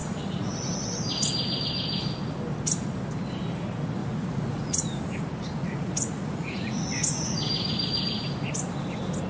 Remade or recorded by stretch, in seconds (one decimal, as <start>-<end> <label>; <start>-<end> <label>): 0.0-0.5 remade; 0.5-4.0 recorded; 4.0-5.0 remade; 5.0-5.6 recorded; 5.6-7.4 remade; 7.4-9.3 recorded